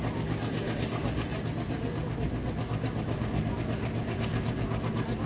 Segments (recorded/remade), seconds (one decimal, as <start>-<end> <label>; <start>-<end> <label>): 0.0-5.3 recorded